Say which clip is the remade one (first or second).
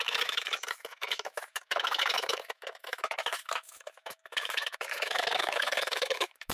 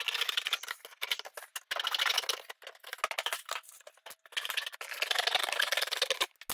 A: first